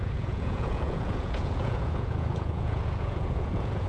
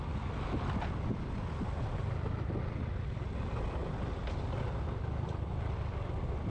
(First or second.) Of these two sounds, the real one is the second